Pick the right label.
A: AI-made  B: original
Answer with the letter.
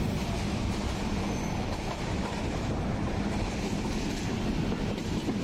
B